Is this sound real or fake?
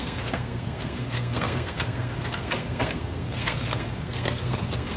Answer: fake